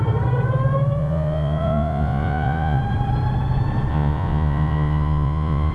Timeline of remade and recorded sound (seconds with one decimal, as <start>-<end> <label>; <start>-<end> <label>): 0.0-1.0 recorded; 1.0-2.8 remade; 2.8-3.9 recorded; 3.9-5.7 remade